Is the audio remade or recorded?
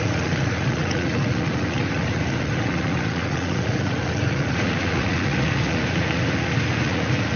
remade